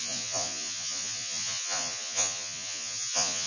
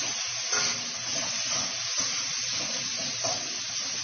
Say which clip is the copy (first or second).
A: first